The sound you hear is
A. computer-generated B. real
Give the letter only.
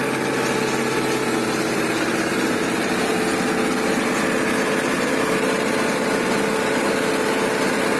B